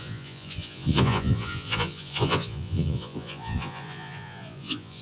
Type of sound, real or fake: fake